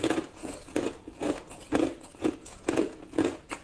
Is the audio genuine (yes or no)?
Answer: no